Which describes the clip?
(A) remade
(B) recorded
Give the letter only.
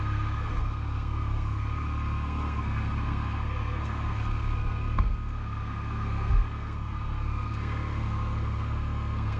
A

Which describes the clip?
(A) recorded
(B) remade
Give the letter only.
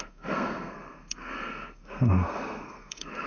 B